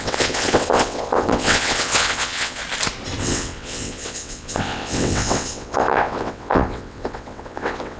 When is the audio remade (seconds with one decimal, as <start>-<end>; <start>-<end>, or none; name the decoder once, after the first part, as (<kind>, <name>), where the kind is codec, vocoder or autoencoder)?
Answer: 0.0-2.6 (vocoder, WaveNeXt); 3.2-8.0